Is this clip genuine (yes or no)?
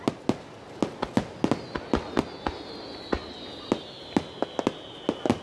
yes